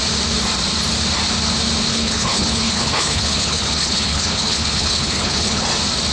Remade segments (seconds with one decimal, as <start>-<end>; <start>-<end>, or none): 1.9-5.6